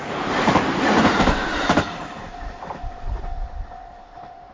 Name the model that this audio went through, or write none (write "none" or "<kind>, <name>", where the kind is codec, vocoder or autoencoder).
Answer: vocoder, BigVGAN v2